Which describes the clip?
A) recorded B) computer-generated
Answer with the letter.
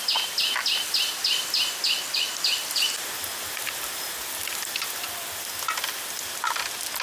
A